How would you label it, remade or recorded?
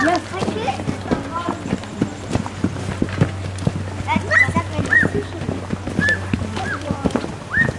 recorded